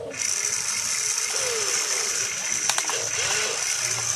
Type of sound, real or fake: real